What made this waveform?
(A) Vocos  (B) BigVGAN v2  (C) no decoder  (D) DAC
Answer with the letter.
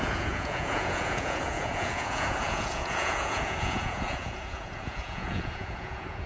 A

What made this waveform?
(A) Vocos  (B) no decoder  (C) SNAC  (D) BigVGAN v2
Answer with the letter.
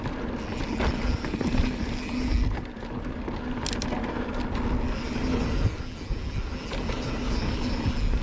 B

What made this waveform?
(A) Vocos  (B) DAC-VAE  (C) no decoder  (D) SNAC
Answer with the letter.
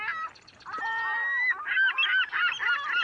C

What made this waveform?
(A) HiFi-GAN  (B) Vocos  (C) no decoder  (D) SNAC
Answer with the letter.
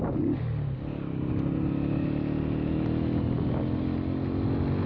C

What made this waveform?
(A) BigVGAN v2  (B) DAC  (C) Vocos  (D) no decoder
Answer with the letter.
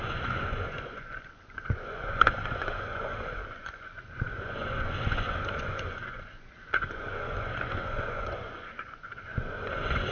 C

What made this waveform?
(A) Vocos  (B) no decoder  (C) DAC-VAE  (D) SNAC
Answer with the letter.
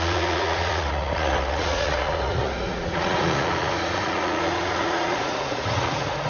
A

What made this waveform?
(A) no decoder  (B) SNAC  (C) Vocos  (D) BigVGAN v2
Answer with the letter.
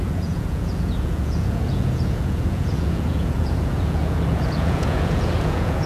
C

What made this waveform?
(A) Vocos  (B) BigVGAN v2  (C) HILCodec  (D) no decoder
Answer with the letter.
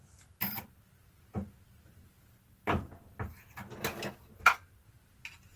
D